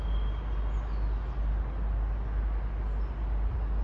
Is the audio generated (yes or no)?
no